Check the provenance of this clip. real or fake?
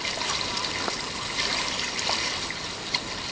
real